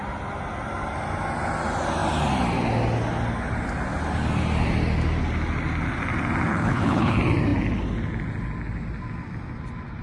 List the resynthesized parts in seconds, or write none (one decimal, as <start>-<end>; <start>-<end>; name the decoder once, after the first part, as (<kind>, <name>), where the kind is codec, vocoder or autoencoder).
6.5-7.1 (codec, HILCodec)